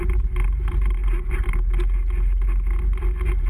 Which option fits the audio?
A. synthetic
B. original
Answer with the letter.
B